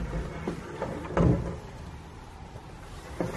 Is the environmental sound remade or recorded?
recorded